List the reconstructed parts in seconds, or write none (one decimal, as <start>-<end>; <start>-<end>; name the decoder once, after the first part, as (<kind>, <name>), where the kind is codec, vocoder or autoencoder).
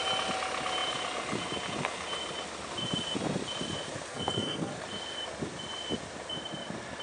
4.1-4.8 (codec, SNAC)